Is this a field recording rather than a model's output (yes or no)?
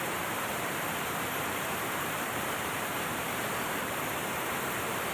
no